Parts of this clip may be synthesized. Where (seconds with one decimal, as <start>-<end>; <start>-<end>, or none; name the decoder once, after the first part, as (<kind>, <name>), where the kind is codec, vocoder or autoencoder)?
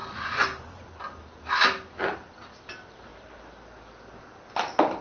none